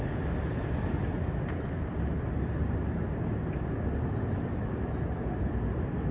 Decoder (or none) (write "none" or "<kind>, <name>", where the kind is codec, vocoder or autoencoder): none